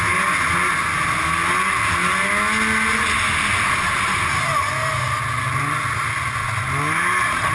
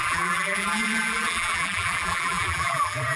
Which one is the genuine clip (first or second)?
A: first